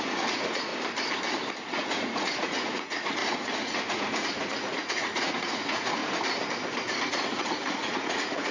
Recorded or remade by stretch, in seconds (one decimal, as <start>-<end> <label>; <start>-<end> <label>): 0.0-0.7 remade; 0.7-1.6 recorded; 1.6-6.0 remade; 6.0-7.0 recorded; 7.0-8.5 remade